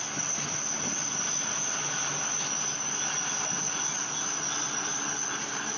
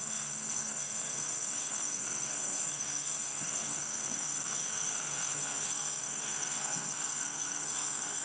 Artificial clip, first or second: second